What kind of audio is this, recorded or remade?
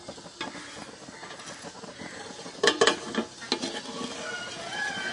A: recorded